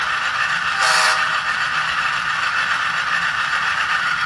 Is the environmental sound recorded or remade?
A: recorded